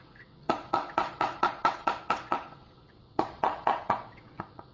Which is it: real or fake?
fake